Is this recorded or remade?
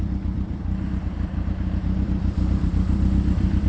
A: remade